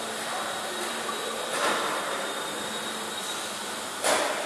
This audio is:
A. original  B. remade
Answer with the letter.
B